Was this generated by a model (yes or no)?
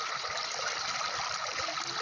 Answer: no